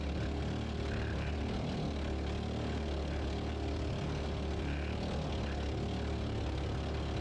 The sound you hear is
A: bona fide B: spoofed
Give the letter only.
A